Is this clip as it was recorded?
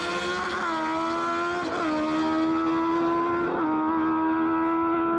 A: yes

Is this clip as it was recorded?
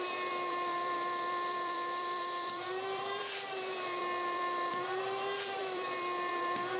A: no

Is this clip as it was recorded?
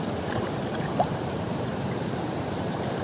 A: no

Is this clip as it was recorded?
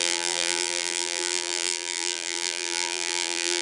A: no